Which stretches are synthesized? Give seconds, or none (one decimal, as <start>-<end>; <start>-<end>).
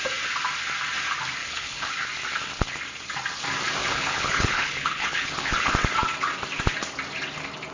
1.4-1.9; 3.8-5.7